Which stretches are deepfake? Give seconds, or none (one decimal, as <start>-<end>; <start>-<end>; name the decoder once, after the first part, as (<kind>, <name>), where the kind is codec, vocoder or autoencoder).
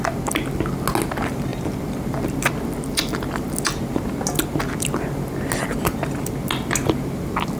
none